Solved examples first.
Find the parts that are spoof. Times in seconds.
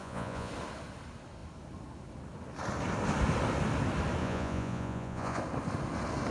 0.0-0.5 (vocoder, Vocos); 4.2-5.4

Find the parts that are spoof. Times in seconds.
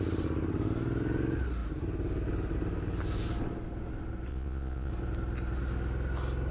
4.3-4.9 (vocoder, Vocos)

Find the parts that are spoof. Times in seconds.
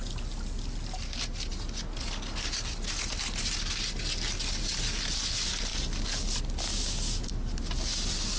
none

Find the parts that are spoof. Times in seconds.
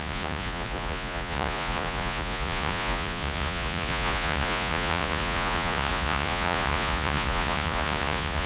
0.0-8.5 (vocoder, Vocos)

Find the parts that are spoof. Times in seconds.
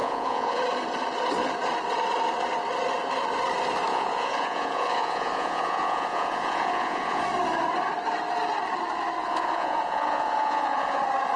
0.0-0.6 (vocoder, Vocos); 3.9-7.2; 9.2-11.0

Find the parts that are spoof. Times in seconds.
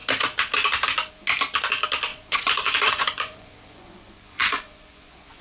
2.1-5.4 (vocoder, Vocos)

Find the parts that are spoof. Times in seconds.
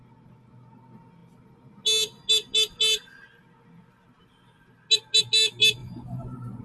5.8-6.6 (vocoder, Vocos)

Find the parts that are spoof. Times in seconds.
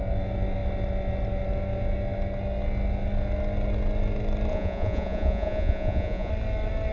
4.5-6.3 (vocoder, Vocos)